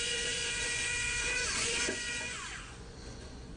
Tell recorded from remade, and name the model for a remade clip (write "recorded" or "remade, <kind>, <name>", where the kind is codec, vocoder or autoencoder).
remade, vocoder, Vocos